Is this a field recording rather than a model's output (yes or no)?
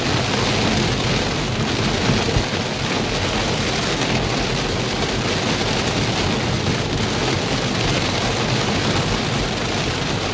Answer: yes